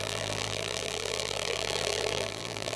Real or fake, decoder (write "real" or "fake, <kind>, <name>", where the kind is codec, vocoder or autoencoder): fake, vocoder, BigVGAN v2